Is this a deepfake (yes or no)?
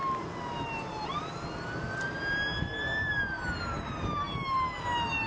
no